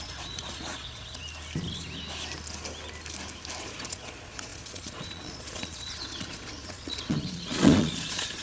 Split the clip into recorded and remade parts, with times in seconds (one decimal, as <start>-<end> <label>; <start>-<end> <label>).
0.0-1.2 remade; 1.2-3.6 recorded; 3.6-8.4 remade